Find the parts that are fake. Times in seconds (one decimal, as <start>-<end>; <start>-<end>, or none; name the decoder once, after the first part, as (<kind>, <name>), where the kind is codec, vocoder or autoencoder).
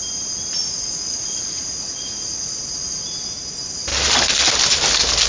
0.6-2.6 (vocoder, Vocos)